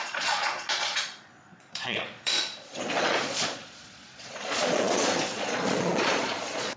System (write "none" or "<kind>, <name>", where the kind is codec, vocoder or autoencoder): vocoder, Vocos